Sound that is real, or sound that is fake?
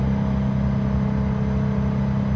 real